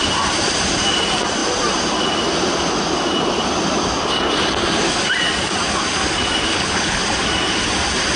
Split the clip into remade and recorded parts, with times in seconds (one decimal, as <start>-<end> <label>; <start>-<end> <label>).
0.0-6.5 recorded; 6.5-7.0 remade; 7.0-8.2 recorded